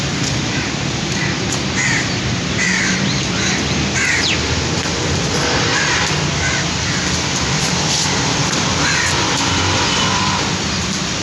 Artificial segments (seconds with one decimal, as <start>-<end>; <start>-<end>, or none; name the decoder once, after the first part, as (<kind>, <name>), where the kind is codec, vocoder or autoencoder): 0.0-11.2 (vocoder, BigVGAN v2)